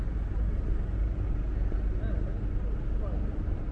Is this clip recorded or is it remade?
recorded